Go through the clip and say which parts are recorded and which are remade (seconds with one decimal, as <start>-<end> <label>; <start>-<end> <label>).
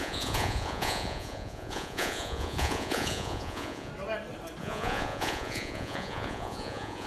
0.0-3.9 remade; 3.9-4.6 recorded; 4.6-7.1 remade